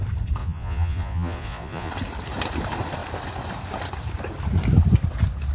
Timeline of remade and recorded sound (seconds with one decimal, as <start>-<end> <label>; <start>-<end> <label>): 0.0-0.4 recorded; 0.4-1.9 remade; 1.9-5.5 recorded